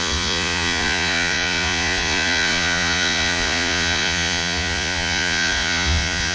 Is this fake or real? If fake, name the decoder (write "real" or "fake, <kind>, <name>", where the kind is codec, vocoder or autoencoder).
fake, vocoder, Vocos